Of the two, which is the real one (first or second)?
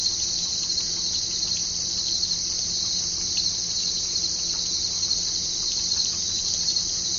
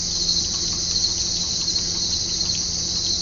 second